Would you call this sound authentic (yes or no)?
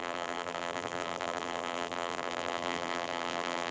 no